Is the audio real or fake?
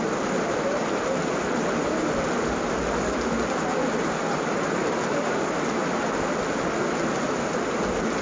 real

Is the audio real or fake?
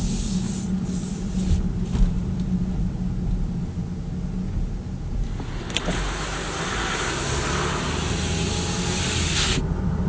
real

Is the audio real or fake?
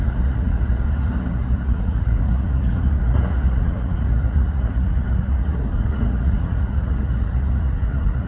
fake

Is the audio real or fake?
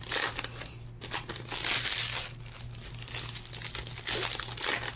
real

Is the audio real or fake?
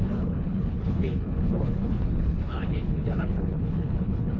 fake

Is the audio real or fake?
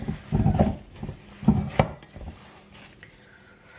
real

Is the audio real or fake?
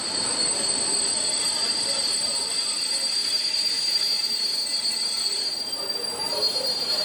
fake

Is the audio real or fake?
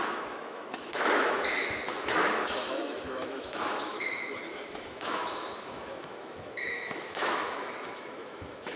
fake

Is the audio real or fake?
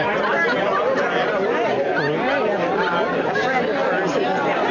real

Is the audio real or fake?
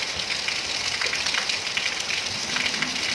real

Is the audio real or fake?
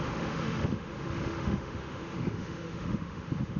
fake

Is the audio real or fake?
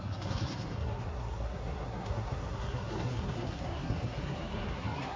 fake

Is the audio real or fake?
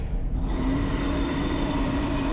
fake